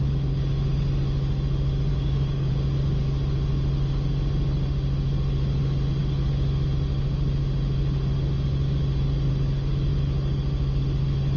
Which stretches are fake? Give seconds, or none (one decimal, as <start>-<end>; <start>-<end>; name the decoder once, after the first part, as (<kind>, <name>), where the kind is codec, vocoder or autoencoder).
1.9-2.5 (codec, DAC)